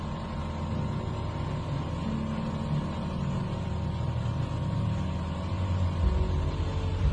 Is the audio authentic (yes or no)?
yes